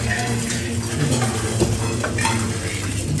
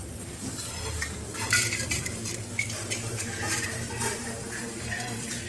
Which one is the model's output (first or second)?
second